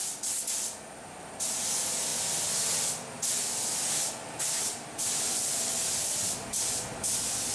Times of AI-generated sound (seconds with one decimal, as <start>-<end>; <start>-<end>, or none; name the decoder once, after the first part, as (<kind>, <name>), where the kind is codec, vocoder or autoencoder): none